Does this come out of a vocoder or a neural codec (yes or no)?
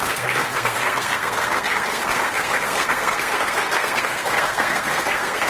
yes